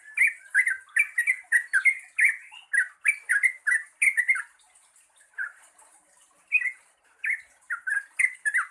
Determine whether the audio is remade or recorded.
recorded